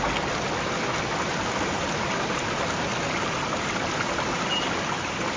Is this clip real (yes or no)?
yes